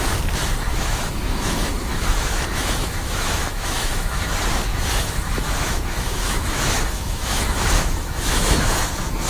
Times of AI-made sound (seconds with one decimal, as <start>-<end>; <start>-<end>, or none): 0.7-4.2; 4.7-8.9